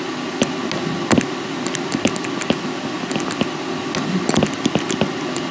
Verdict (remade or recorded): recorded